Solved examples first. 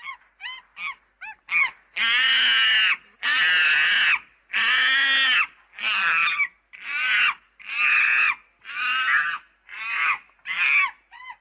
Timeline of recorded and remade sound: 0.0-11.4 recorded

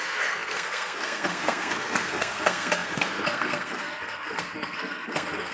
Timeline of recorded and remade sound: 0.0-5.5 remade

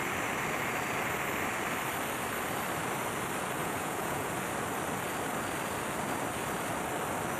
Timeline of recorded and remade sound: 0.0-3.6 recorded; 3.6-4.3 remade; 4.3-7.4 recorded

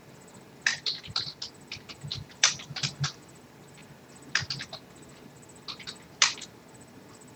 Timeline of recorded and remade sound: 0.0-0.7 recorded; 0.7-1.5 remade; 1.5-2.1 recorded; 2.1-3.4 remade; 3.4-7.4 recorded

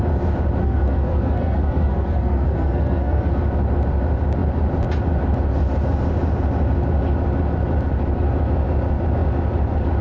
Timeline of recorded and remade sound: 0.0-0.6 recorded; 0.6-3.3 remade; 3.3-10.0 recorded

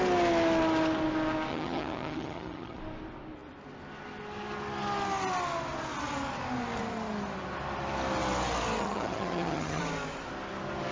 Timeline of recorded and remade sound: 0.0-1.5 recorded; 1.5-2.8 remade; 2.8-8.8 recorded; 8.8-9.8 remade; 9.8-10.9 recorded